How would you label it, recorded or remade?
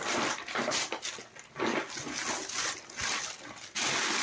recorded